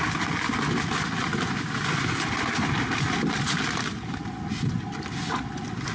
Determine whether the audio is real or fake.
real